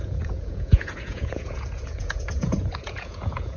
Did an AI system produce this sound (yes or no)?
yes